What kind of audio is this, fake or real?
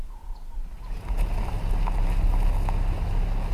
real